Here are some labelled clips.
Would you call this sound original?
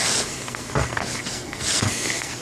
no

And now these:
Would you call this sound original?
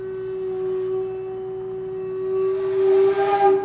yes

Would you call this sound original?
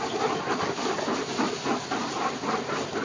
yes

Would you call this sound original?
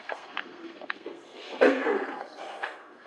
no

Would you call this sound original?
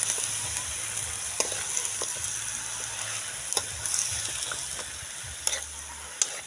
yes